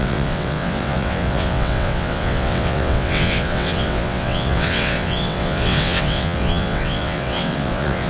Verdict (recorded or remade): remade